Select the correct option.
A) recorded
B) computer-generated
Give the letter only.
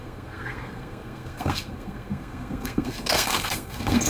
B